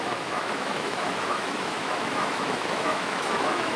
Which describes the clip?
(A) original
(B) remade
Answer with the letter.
B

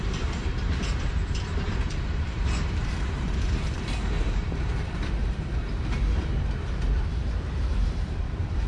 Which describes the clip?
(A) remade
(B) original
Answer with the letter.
A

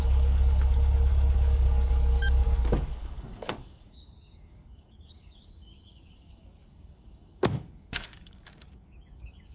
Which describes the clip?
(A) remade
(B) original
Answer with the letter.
A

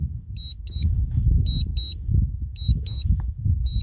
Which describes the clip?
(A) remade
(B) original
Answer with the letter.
A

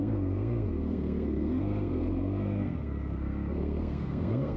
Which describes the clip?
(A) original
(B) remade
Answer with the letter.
B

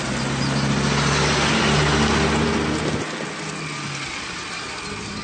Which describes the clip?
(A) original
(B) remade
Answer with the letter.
A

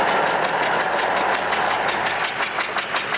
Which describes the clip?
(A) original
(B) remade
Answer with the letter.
A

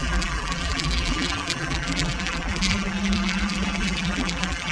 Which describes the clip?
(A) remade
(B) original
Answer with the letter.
A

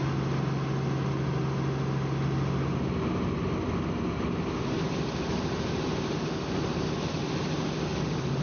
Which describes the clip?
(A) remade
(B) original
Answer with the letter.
B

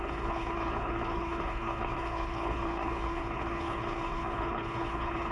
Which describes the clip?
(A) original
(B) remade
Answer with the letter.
B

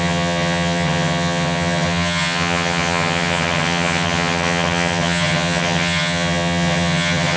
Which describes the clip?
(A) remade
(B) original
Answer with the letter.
A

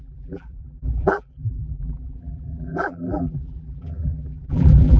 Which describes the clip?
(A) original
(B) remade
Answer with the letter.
B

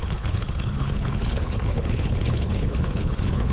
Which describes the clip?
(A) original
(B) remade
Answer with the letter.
B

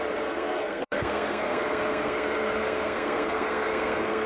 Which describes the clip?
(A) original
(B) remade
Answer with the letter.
B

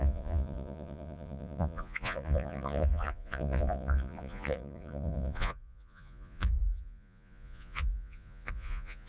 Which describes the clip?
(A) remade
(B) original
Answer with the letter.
A